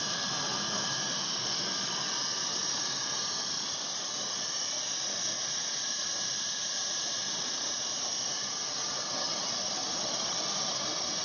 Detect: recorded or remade recorded